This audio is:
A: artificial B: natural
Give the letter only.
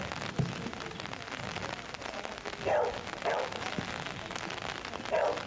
B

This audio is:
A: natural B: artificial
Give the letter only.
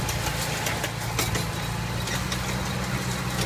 A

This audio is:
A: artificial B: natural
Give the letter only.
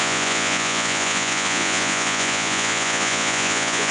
A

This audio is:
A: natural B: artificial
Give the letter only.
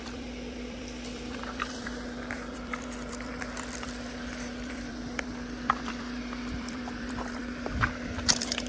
B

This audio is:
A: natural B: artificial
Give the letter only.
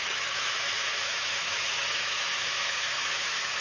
B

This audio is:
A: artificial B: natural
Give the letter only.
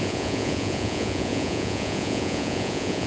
A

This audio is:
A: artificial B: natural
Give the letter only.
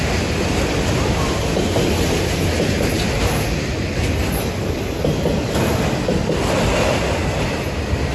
B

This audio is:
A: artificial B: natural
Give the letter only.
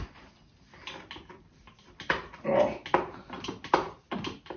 B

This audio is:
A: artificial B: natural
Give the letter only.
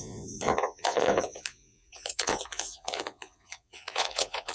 A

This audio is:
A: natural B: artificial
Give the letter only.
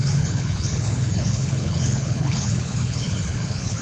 B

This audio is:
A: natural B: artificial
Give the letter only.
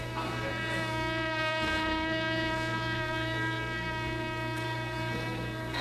B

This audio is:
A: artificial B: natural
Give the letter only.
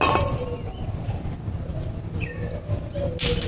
B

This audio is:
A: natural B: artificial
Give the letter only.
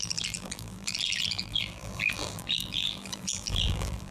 B